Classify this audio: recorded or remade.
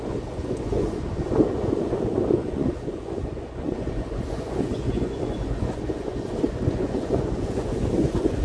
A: remade